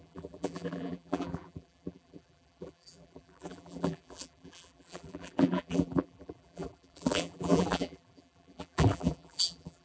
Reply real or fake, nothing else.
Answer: fake